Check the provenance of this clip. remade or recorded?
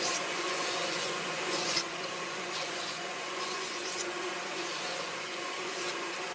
remade